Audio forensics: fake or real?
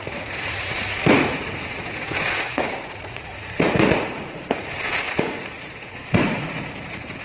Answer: fake